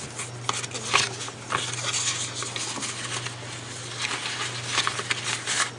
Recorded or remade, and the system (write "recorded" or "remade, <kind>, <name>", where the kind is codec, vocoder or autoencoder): recorded